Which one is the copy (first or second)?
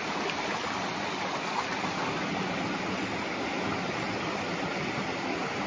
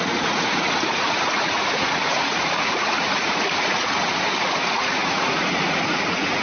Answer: second